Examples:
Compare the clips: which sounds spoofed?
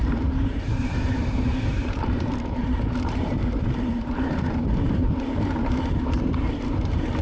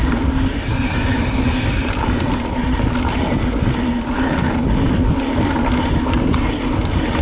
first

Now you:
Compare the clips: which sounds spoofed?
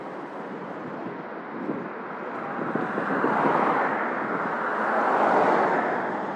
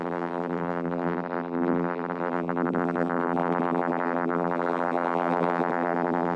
second